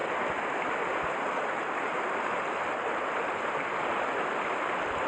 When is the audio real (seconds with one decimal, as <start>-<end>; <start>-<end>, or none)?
0.0-5.1